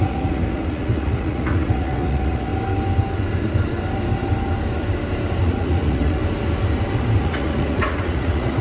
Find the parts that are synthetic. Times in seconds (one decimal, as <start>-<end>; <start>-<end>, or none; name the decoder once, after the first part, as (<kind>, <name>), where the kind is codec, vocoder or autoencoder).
0.0-2.5 (vocoder, Vocos); 5.4-6.2; 7.2-8.6